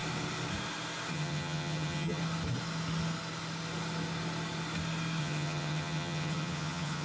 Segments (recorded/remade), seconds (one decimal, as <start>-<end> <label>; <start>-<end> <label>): 0.0-1.1 recorded; 1.1-2.2 remade; 2.2-5.2 recorded; 5.2-7.0 remade